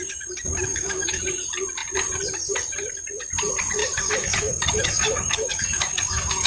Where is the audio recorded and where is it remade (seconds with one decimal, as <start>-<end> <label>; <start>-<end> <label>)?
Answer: 0.0-0.7 recorded; 0.7-1.2 remade; 1.2-3.8 recorded; 3.8-6.5 remade